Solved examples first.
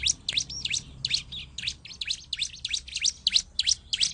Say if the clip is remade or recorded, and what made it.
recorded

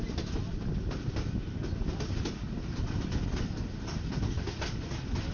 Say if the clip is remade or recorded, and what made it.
recorded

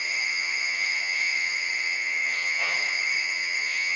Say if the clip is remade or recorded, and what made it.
remade, vocoder, HiFi-GAN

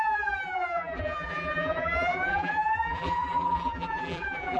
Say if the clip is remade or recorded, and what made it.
remade, vocoder, BigVGAN v2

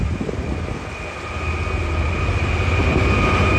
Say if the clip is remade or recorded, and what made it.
recorded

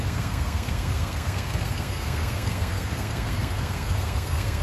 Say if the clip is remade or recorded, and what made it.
remade, codec, SNAC